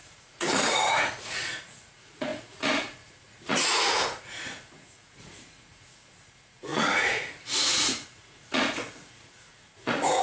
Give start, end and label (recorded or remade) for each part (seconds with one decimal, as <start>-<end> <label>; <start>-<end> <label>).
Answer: 0.0-10.2 remade